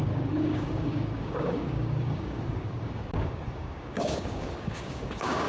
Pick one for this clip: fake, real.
fake